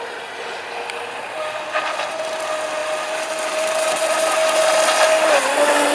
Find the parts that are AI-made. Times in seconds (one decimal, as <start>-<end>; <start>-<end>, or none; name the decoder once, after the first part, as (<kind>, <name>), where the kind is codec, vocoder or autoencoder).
none